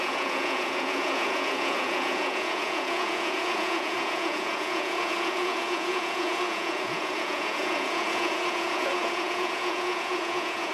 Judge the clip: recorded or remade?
remade